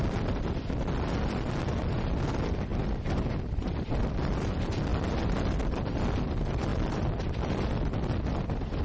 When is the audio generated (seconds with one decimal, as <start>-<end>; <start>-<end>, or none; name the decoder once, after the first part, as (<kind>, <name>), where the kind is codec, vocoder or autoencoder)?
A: none